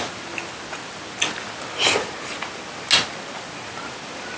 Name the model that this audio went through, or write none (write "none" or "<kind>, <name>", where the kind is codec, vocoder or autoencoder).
none